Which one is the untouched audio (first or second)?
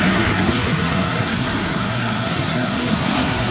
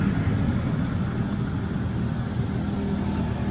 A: second